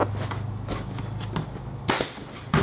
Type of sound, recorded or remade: recorded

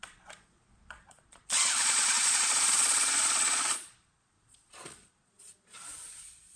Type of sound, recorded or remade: remade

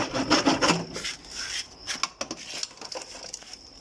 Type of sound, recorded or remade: recorded